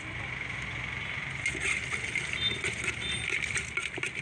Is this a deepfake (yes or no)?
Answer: no